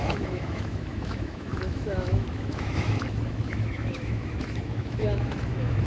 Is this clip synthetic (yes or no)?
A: yes